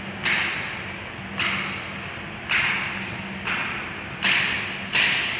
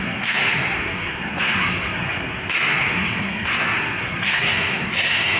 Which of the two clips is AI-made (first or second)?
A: second